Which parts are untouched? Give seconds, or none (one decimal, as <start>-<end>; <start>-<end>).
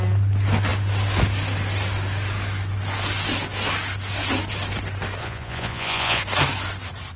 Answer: 0.0-5.2; 6.2-7.2